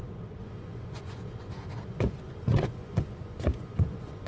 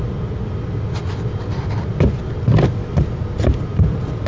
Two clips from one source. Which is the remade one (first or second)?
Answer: first